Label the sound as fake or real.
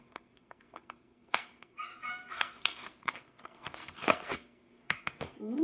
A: fake